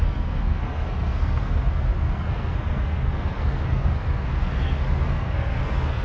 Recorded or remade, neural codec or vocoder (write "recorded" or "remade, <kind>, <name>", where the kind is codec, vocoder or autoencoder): remade, codec, SNAC